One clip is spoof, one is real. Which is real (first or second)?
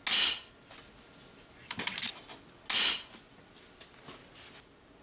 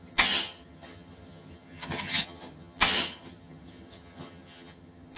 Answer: first